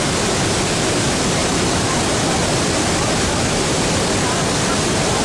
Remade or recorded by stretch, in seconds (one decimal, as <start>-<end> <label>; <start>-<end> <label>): 0.0-5.2 recorded